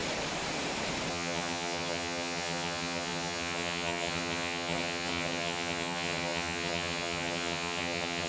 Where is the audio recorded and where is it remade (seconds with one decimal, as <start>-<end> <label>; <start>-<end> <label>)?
0.0-1.1 recorded; 1.1-8.3 remade